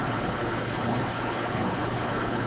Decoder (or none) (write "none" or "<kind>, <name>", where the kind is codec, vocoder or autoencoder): codec, HILCodec